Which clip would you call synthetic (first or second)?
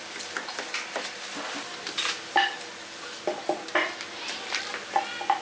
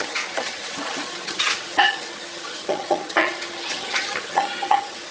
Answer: second